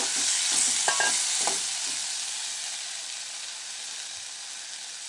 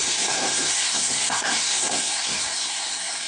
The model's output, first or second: second